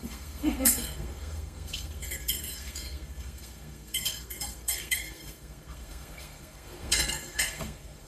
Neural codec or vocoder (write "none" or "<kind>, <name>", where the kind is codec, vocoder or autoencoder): codec, SNAC